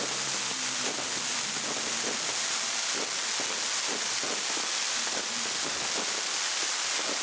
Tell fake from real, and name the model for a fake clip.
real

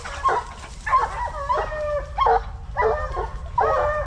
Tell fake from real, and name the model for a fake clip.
real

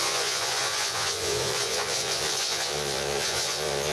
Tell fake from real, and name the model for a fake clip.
fake, vocoder, Vocos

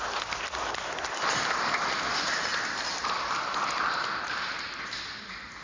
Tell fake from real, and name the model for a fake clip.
real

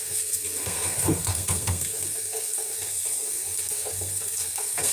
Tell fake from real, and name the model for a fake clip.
fake, codec, SNAC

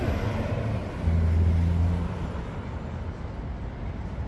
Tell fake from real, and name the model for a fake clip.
real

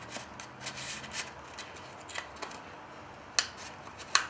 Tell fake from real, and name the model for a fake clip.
real